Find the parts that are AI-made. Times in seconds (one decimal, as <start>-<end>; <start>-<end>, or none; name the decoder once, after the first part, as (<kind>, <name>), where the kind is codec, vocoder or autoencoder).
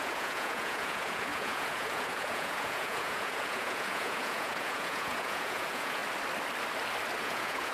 0.0-6.0 (vocoder, Vocos); 7.2-7.7